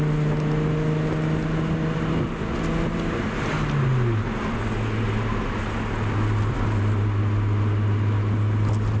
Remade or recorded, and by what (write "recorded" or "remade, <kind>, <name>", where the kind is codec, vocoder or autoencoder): recorded